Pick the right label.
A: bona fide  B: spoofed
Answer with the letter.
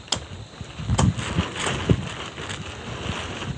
A